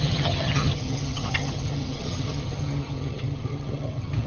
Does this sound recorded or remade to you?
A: remade